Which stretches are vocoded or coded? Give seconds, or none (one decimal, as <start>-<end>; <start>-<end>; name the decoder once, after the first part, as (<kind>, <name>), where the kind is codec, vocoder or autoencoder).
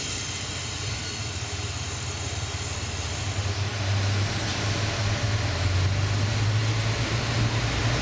none